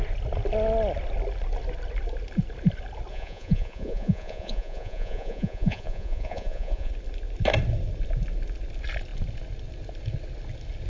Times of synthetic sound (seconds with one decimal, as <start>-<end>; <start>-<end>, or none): 3.1-6.9